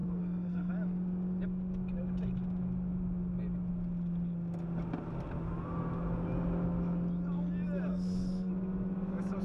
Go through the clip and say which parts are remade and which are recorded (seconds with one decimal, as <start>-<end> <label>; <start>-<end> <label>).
0.0-0.7 remade; 0.7-7.9 recorded; 7.9-8.5 remade; 8.5-9.4 recorded